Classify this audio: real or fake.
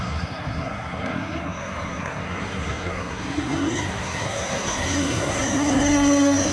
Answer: fake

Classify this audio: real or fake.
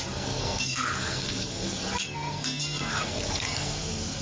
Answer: fake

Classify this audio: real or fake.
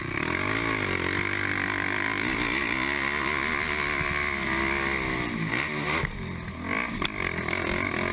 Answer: real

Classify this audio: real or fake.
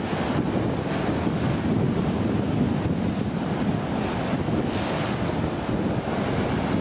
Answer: real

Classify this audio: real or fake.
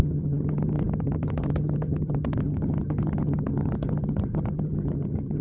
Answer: fake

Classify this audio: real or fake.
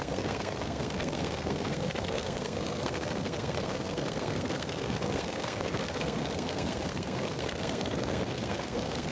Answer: fake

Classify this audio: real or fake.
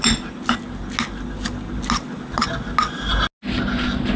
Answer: real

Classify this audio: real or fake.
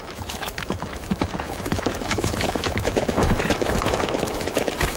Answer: fake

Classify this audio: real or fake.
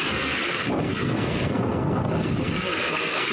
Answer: fake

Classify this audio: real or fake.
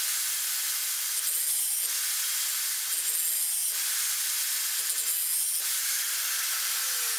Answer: real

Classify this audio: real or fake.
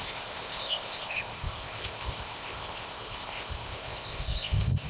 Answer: fake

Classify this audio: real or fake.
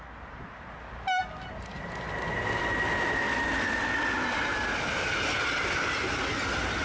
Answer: real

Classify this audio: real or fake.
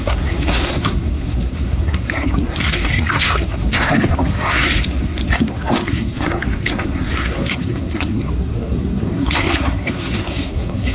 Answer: fake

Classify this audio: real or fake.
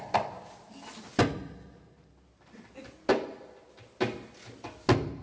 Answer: real